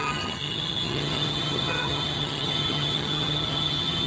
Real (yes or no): no